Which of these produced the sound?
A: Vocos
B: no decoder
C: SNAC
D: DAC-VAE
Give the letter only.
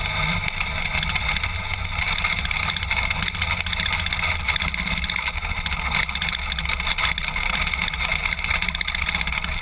B